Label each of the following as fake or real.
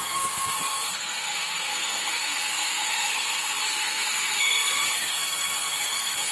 fake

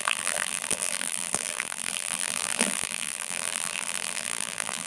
fake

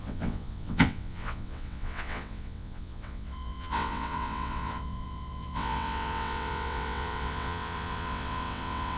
fake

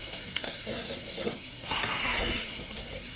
fake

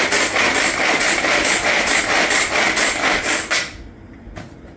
real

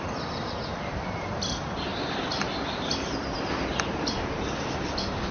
real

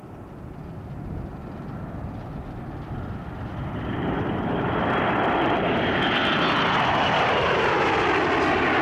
real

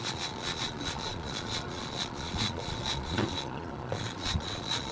fake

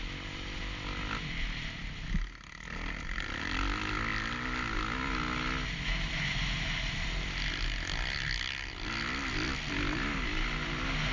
real